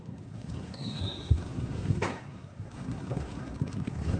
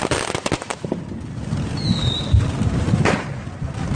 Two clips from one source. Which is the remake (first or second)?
first